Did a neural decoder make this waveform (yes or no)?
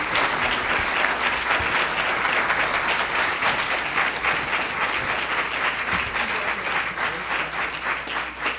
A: no